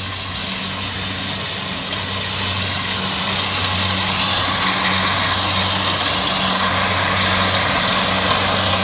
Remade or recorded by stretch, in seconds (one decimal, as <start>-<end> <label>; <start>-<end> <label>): 0.0-8.8 recorded